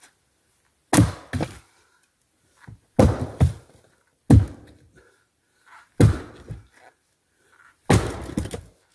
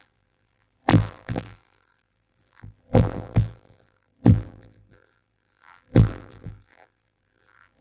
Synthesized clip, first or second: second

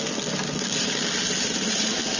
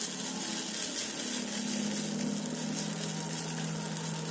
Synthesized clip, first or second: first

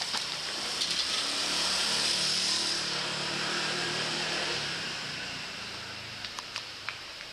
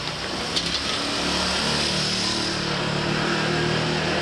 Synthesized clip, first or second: first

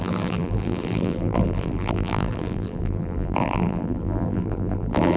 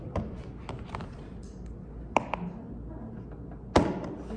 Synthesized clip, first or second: first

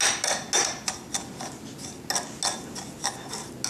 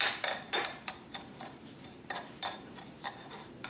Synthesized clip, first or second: second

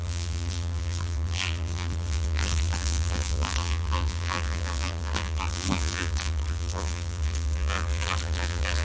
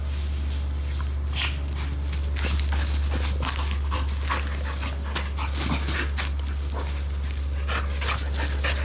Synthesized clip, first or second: first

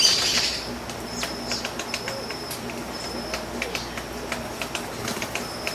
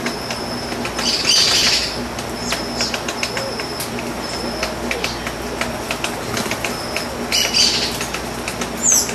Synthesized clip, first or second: first